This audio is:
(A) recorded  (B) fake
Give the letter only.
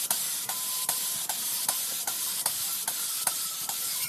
A